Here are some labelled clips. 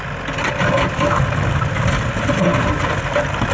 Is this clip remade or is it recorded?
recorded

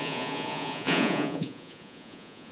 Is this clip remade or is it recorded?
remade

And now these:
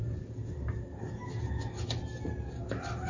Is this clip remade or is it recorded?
recorded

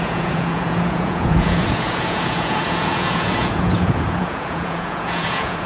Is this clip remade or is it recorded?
remade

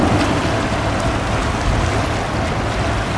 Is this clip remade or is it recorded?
recorded